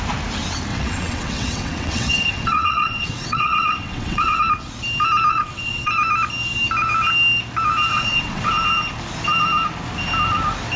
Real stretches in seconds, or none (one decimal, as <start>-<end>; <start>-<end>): 0.0-0.7; 4.4-5.3; 5.9-7.9; 8.5-10.8